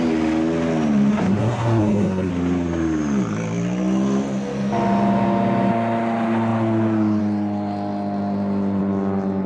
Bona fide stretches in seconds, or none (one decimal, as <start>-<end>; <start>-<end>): 0.0-1.1; 2.3-9.5